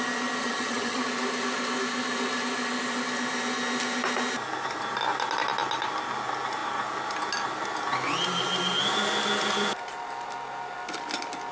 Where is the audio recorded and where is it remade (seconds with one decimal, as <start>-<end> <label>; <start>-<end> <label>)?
0.0-0.4 recorded; 0.4-1.0 remade; 1.0-11.5 recorded